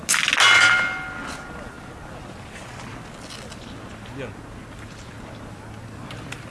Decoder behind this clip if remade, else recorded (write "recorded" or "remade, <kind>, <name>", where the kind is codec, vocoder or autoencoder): recorded